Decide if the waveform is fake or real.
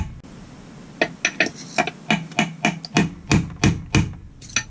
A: real